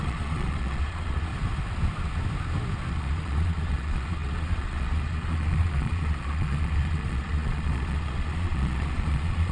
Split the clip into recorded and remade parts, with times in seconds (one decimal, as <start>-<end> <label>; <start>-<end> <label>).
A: 0.0-1.3 remade; 1.3-2.9 recorded; 2.9-9.5 remade